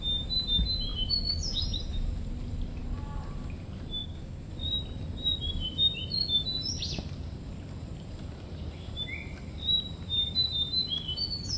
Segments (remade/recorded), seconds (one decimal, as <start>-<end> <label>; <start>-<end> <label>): 0.0-4.0 recorded; 4.0-4.5 remade; 4.5-11.6 recorded